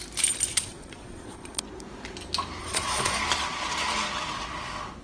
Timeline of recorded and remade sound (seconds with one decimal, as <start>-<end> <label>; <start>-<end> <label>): 0.0-0.5 recorded; 0.5-1.6 remade; 1.6-2.6 recorded; 2.6-3.2 remade; 3.2-5.0 recorded